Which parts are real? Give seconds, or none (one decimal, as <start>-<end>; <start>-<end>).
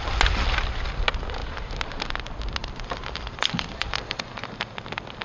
0.0-2.6; 4.3-5.2